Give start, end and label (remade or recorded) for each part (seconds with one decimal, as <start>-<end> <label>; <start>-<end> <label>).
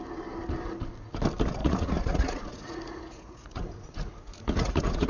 0.0-1.6 recorded; 1.6-5.1 remade